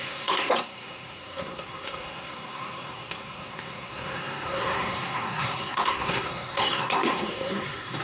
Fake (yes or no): yes